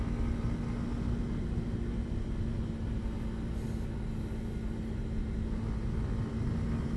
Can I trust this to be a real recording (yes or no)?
yes